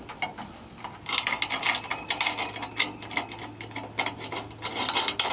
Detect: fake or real real